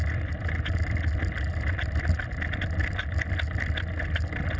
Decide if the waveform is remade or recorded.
recorded